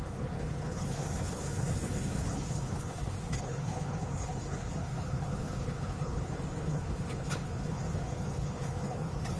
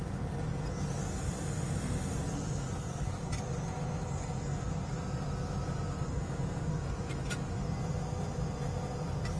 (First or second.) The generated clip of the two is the first